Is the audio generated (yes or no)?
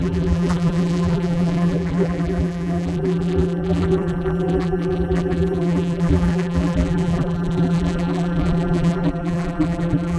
yes